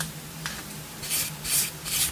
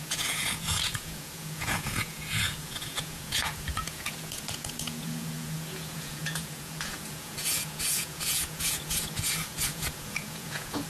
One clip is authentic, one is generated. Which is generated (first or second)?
second